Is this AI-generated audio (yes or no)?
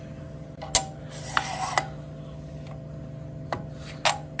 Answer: no